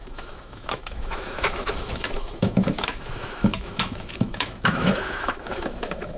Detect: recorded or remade remade